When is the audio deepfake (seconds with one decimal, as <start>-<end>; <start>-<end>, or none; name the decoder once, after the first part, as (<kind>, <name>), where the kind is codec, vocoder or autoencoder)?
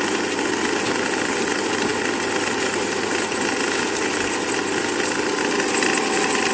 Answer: none